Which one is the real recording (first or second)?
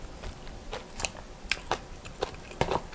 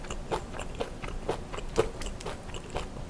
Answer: second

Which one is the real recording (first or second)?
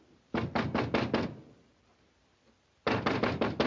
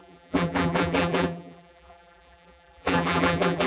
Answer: first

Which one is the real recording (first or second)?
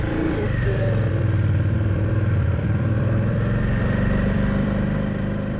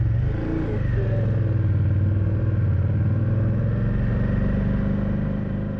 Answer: second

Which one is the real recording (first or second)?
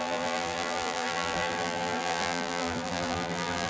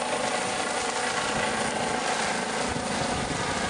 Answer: second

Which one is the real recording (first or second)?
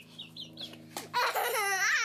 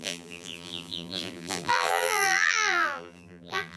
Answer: first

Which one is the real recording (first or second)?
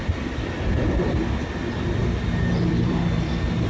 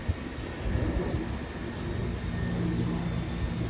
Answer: second